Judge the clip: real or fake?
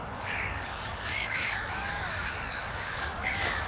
fake